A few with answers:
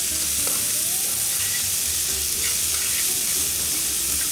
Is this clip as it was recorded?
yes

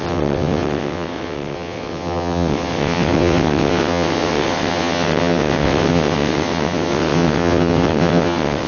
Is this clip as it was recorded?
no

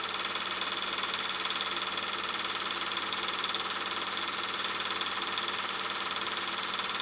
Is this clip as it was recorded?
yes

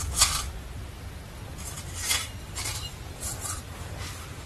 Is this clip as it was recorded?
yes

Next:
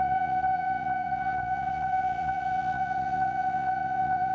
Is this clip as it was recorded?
no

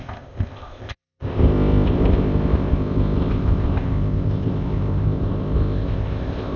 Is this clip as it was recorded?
no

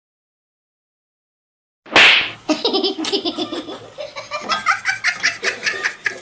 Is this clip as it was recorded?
yes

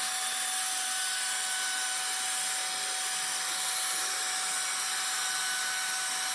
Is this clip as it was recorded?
yes